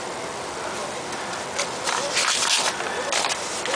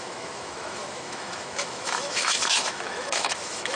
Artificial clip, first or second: second